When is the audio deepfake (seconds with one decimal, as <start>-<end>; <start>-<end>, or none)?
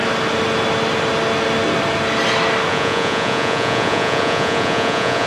2.7-5.3